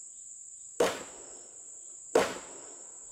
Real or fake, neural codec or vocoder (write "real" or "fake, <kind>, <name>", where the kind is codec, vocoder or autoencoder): fake, vocoder, BigVGAN v2